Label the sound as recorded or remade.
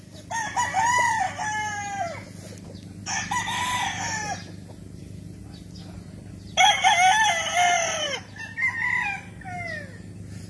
recorded